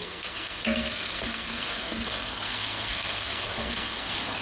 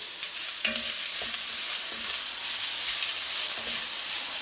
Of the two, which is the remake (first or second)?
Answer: first